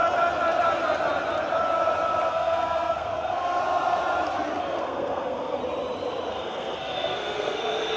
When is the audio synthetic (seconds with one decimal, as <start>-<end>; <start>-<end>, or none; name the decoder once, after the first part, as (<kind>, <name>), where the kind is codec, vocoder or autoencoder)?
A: 2.3-3.6 (codec, SNAC); 4.6-5.6; 6.3-8.0